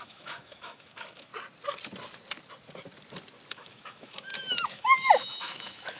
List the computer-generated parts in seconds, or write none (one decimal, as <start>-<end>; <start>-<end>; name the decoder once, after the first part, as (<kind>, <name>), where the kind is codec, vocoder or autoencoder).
0.0-1.3 (autoencoder, DAC-VAE); 3.5-6.0